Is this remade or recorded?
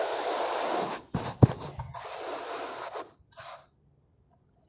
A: recorded